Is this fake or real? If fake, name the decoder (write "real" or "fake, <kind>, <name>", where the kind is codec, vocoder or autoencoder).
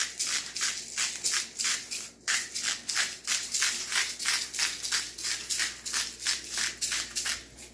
real